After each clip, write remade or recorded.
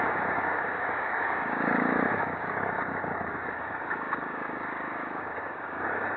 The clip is remade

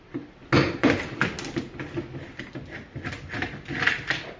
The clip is recorded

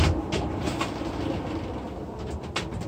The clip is recorded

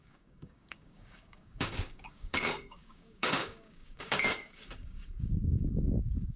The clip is remade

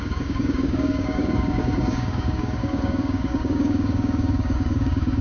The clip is remade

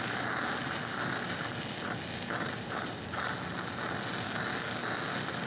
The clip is recorded